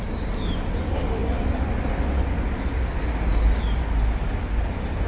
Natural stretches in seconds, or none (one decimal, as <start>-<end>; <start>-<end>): 0.0-5.1